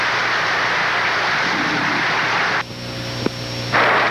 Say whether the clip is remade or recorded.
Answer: recorded